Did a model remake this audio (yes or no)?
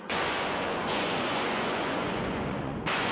yes